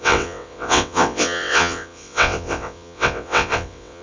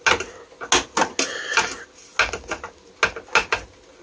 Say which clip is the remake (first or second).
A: first